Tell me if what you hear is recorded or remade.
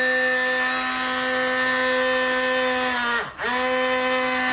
recorded